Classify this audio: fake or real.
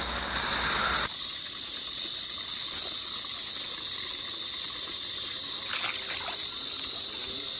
real